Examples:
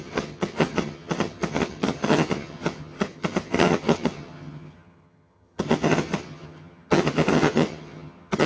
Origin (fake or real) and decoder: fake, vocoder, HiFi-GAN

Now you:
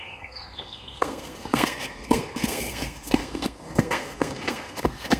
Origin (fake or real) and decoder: fake, codec, SNAC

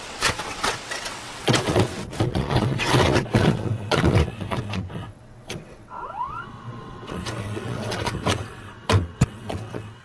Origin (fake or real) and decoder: fake, vocoder, WaveNeXt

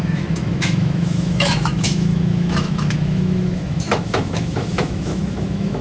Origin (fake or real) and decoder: fake, autoencoder, DAC-VAE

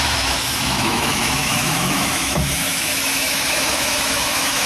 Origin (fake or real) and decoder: fake, autoencoder, DAC-VAE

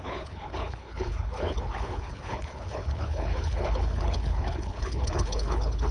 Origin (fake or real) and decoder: fake, codec, HILCodec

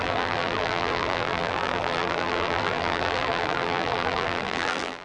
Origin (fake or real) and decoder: fake, vocoder, BigVGAN v2